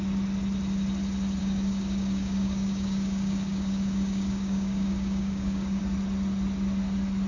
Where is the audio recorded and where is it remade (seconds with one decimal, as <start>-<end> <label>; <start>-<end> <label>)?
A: 0.0-1.4 recorded; 1.4-5.8 remade; 5.8-7.3 recorded